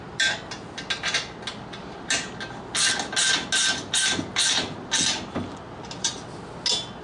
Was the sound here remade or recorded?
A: recorded